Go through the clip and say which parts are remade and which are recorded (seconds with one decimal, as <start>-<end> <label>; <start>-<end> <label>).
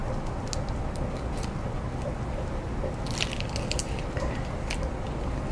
0.0-5.5 recorded